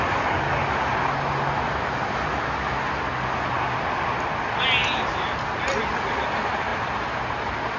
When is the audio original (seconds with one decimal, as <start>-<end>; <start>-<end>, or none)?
0.0-7.8